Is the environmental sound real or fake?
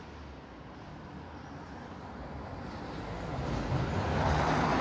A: real